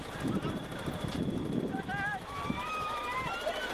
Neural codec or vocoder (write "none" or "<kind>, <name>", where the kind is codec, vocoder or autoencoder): none